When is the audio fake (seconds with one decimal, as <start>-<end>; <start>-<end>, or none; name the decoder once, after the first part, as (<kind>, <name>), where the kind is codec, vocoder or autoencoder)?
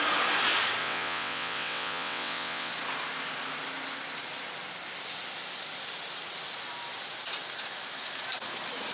0.8-2.7 (vocoder, WaveNeXt)